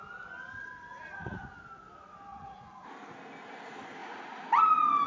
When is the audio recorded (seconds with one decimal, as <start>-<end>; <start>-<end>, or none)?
0.0-0.9; 1.6-2.3; 2.9-4.0; 4.6-5.1